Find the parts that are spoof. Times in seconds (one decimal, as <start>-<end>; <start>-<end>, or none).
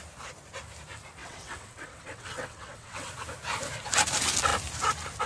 1.2-3.1